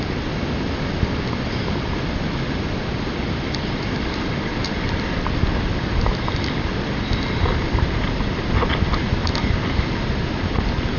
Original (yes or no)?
yes